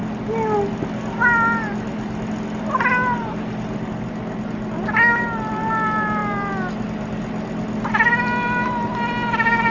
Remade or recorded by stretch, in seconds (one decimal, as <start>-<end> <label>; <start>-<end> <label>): 0.0-9.7 recorded